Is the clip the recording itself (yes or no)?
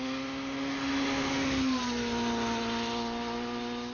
yes